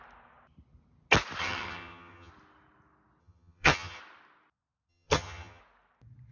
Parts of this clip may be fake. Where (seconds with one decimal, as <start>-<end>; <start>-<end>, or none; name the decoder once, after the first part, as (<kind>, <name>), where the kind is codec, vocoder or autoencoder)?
1.4-2.3 (vocoder, HiFi-GAN); 3.2-4.0; 4.9-5.6